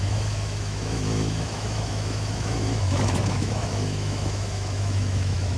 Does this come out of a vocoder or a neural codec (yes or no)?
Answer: yes